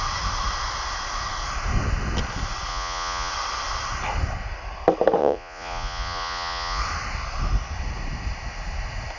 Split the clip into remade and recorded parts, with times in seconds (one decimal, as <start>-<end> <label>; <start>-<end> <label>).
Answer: 0.0-2.7 recorded; 2.7-3.3 remade; 3.3-5.2 recorded; 5.2-6.8 remade; 6.8-9.2 recorded